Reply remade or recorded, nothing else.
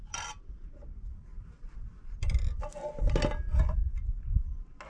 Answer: recorded